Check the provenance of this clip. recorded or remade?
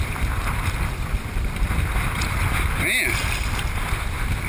recorded